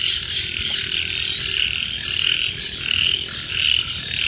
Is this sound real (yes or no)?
yes